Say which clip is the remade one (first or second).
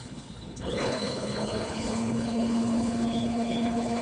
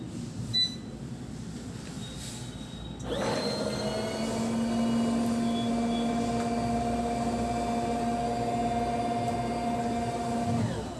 first